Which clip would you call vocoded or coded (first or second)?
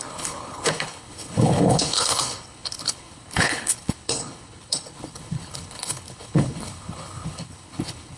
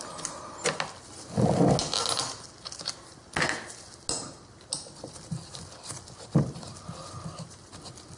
first